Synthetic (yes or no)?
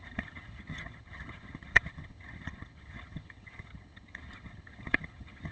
yes